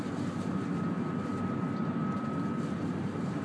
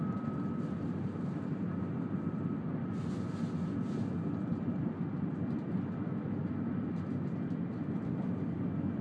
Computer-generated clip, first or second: second